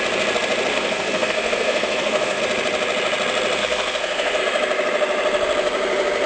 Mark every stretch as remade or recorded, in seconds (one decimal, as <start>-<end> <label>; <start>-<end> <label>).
0.0-0.7 recorded; 0.7-2.4 remade; 2.4-3.6 recorded; 3.6-4.4 remade; 4.4-6.3 recorded